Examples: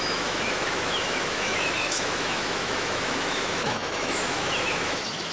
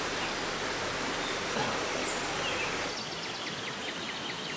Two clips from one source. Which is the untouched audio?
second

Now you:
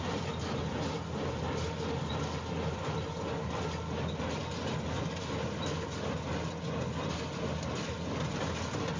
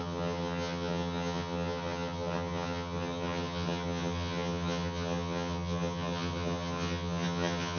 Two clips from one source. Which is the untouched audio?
first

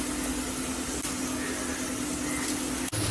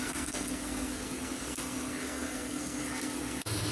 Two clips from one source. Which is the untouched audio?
first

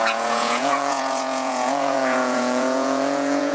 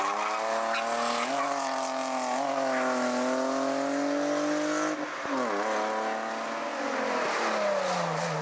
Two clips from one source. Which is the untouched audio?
second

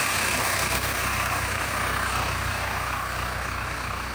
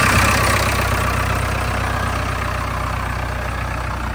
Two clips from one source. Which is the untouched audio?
second